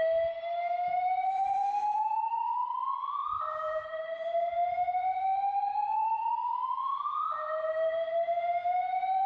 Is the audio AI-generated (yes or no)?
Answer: no